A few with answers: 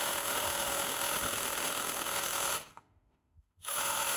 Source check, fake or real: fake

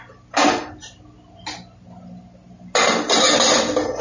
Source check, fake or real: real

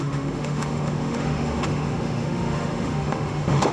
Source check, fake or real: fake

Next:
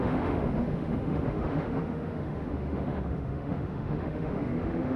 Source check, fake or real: fake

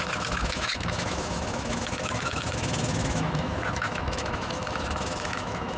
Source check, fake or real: fake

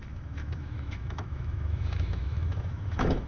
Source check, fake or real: fake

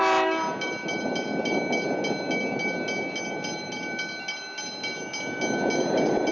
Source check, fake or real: real